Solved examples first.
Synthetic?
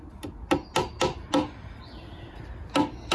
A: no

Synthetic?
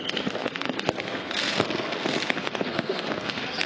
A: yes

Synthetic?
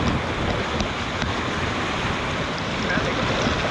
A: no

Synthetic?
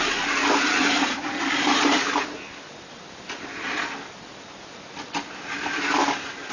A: no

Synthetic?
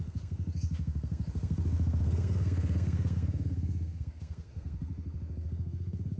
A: yes